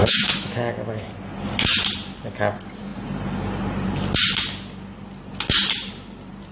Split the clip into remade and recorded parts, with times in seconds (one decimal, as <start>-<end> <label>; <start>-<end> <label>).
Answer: 0.0-1.1 remade; 1.1-6.5 recorded